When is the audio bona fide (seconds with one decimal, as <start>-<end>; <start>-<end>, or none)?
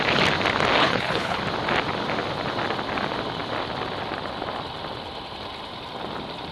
0.0-0.8; 1.4-6.5